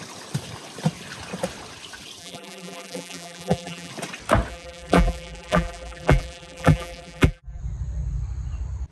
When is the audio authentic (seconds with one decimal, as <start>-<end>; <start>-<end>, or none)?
0.0-2.2; 3.9-4.5; 7.6-8.9